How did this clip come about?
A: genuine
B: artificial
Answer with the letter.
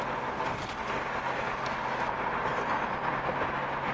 A